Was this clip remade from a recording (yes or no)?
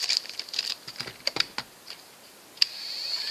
yes